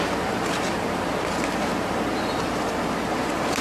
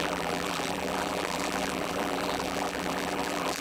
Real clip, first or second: first